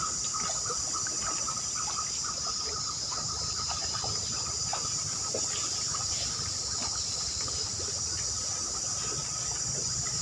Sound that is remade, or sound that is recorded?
recorded